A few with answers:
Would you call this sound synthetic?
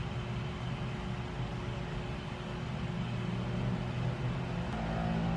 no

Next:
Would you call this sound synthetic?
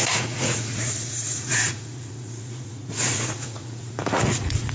yes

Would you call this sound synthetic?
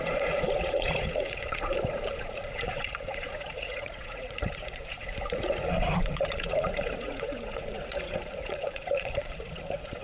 yes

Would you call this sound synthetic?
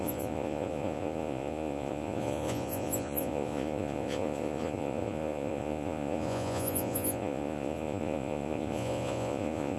yes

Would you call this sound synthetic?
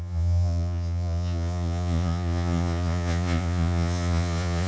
yes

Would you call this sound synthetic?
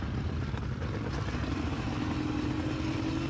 no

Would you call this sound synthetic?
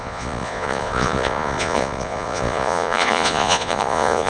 yes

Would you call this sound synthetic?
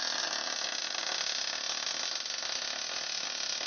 no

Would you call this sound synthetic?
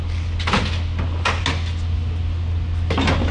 no